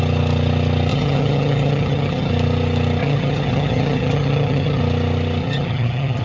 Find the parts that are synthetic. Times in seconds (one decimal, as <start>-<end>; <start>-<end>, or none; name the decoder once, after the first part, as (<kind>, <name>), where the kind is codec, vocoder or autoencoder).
0.9-2.3 (vocoder, HiFi-GAN); 3.0-4.8; 5.4-6.2